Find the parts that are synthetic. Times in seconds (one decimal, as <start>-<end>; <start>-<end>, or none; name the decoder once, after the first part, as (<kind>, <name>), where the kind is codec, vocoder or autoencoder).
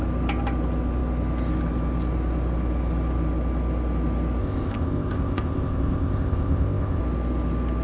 4.4-7.0 (codec, ZipCodec)